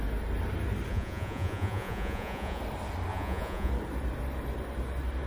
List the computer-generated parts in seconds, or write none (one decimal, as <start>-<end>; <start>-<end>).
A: 0.9-2.6; 3.1-3.7